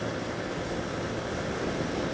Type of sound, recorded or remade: recorded